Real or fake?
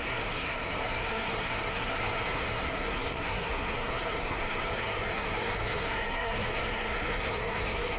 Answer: fake